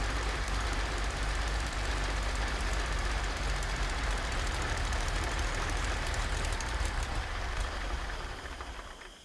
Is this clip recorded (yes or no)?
no